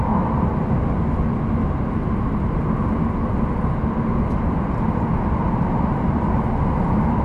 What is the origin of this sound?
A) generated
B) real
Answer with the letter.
B